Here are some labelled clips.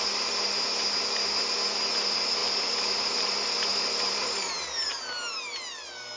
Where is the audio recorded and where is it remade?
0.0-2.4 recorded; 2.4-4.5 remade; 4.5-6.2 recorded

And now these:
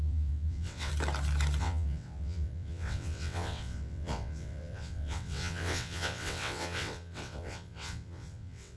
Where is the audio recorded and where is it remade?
0.0-0.9 remade; 0.9-1.6 recorded; 1.6-8.8 remade

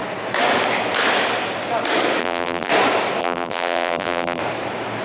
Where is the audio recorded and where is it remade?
0.0-2.2 recorded; 2.2-2.7 remade; 2.7-3.2 recorded; 3.2-4.4 remade; 4.4-5.0 recorded

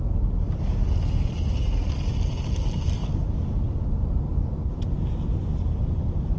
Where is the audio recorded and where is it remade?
0.0-6.4 recorded

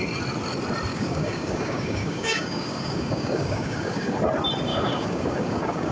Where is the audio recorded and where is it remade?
0.0-0.9 recorded; 0.9-4.2 remade; 4.2-4.7 recorded; 4.7-5.9 remade

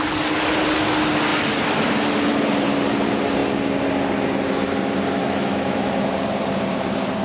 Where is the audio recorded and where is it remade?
0.0-5.2 recorded; 5.2-5.9 remade; 5.9-7.2 recorded

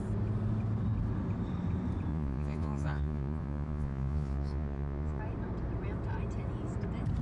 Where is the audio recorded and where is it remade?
0.0-2.1 recorded; 2.1-5.2 remade; 5.2-7.2 recorded